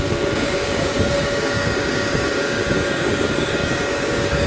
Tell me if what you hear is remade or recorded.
remade